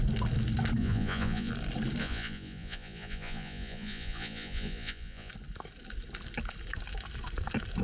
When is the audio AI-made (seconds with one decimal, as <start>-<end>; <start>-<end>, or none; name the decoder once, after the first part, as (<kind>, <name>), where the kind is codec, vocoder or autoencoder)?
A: 0.8-1.5 (vocoder, Vocos); 2.0-5.3

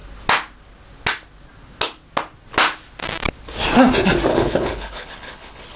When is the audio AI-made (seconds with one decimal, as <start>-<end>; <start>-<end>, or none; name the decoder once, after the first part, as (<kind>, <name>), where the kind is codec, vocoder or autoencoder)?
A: 4.3-5.8 (codec, HILCodec)

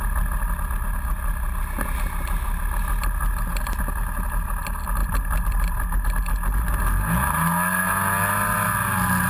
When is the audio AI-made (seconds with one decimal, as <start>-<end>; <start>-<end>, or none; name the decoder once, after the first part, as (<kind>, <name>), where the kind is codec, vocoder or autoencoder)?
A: 5.0-6.1 (vocoder, BigVGAN v2)

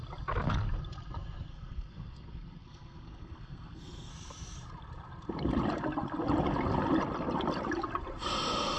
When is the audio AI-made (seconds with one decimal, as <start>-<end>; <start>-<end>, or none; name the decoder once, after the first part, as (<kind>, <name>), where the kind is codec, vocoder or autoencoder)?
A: 1.5-4.1 (codec, SNAC)

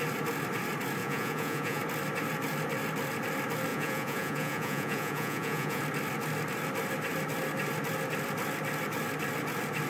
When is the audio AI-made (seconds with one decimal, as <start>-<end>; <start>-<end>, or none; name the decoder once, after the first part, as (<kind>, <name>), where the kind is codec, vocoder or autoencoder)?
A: 1.0-1.8 (vocoder, Vocos); 3.7-5.8